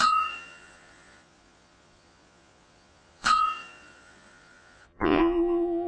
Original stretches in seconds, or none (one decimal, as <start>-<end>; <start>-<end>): none